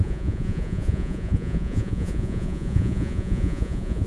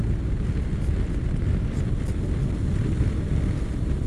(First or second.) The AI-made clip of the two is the first